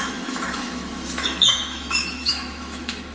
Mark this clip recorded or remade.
remade